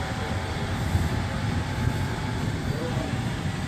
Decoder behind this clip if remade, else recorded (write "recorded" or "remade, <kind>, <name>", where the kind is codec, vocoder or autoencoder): recorded